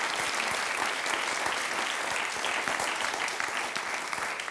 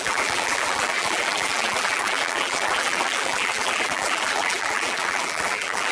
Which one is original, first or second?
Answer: first